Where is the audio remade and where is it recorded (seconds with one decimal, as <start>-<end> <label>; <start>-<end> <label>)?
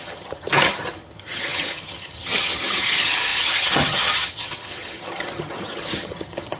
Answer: 0.0-6.6 remade